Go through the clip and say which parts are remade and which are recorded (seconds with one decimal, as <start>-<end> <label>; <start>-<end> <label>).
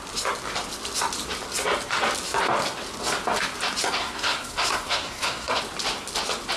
0.0-4.0 recorded; 4.0-5.6 remade; 5.6-6.6 recorded